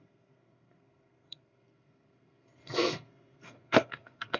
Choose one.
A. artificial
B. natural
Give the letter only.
A